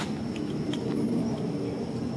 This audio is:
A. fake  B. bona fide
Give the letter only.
B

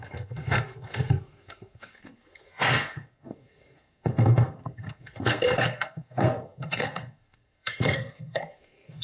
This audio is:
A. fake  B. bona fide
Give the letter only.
A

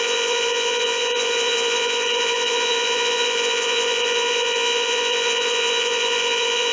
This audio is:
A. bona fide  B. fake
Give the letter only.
B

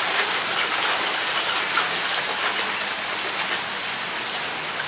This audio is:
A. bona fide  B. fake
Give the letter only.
A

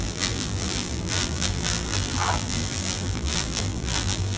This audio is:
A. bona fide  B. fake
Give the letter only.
B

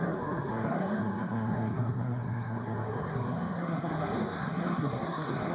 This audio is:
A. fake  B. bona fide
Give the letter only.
A